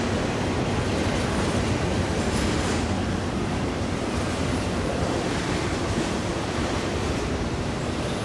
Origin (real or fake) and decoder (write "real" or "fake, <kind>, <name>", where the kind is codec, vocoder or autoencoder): fake, vocoder, BigVGAN v2